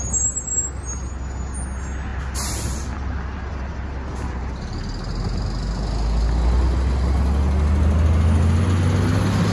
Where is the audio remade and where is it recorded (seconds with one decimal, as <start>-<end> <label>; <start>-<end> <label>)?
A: 0.0-9.5 recorded